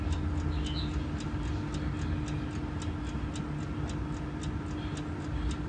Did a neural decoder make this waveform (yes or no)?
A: no